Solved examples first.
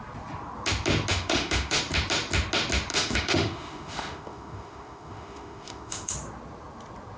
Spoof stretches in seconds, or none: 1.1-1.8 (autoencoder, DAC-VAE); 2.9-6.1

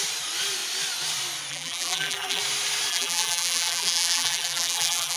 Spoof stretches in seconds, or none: 1.5-2.4 (vocoder, BigVGAN v2); 2.9-5.2

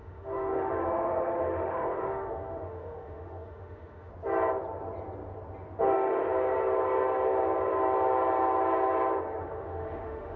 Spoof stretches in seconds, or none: 0.0-4.1 (autoencoder, DAC-VAE); 5.8-6.3; 9.4-10.4

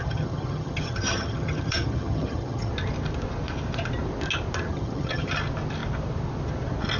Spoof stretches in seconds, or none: 0.0-2.7 (vocoder, HiFi-GAN); 4.7-5.3

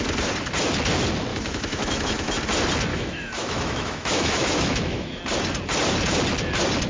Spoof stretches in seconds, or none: 1.3-2.4 (autoencoder, DAC-VAE); 2.9-5.2

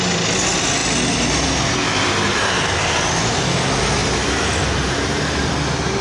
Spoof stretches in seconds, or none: none